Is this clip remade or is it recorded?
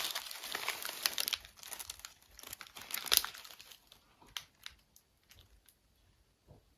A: recorded